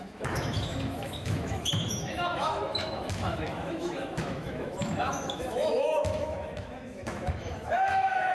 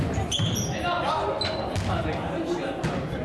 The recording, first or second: second